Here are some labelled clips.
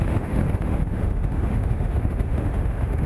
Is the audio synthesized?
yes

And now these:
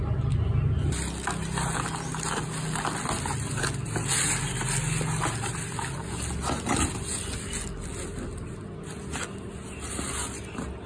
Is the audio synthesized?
no